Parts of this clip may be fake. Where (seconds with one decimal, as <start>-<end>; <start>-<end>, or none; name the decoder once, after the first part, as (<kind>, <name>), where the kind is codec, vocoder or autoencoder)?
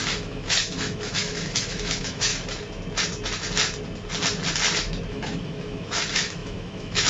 0.0-2.3 (autoencoder, DAC-VAE); 5.1-7.1